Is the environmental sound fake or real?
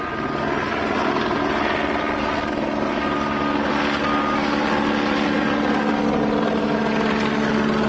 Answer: real